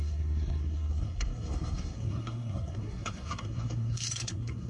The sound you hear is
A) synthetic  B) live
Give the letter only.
A